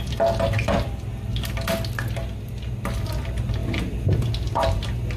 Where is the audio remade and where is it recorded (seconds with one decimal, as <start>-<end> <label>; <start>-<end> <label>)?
0.0-5.2 recorded